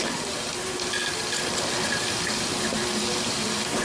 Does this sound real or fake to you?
real